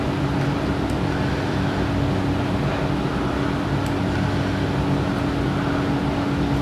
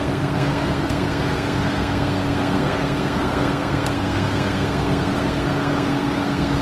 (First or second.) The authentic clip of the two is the first